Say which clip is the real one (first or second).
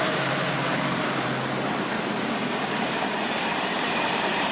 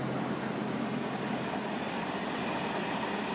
second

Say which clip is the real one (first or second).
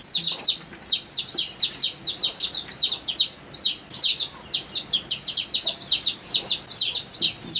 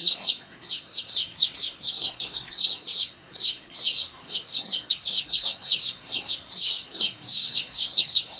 first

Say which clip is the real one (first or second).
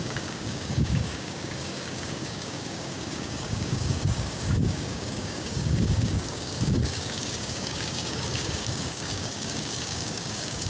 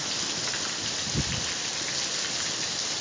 second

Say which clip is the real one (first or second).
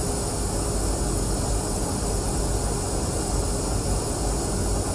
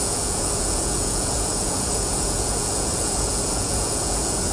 first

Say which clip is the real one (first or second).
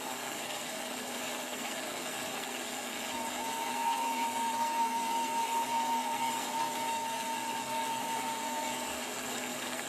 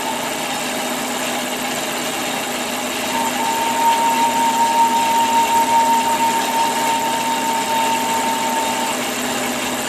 second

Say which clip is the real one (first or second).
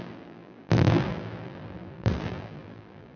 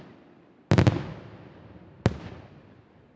second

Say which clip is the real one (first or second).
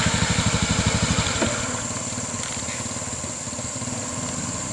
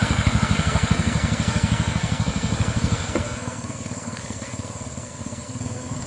first